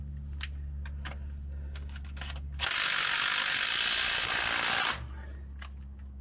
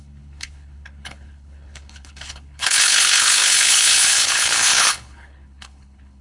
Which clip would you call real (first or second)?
first